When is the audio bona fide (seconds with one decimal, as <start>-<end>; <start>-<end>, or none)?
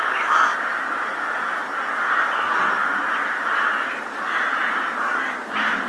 0.0-5.9